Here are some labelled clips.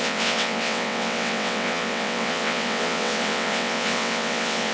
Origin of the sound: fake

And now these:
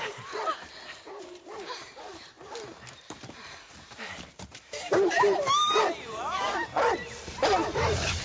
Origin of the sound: fake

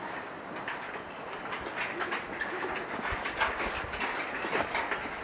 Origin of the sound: real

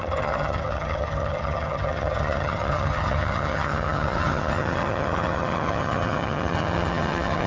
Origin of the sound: fake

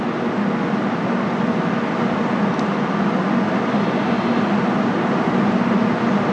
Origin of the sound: real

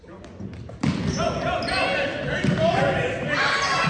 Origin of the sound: real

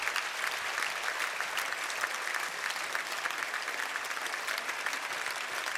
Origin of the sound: real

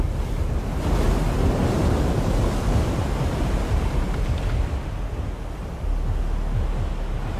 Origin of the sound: real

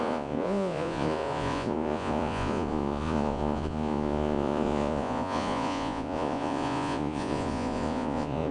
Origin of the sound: fake